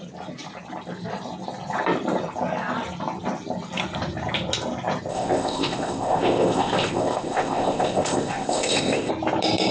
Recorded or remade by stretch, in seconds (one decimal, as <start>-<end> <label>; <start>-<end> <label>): 0.0-5.1 recorded; 5.1-9.1 remade; 9.1-9.7 recorded